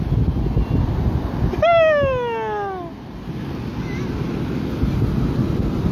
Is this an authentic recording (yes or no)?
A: yes